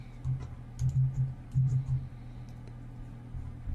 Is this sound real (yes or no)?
yes